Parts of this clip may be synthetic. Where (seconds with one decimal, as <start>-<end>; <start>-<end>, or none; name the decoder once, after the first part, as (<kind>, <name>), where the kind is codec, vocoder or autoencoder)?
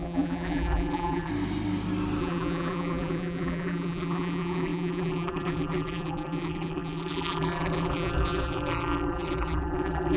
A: 0.0-1.3 (vocoder, BigVGAN v2); 2.2-10.2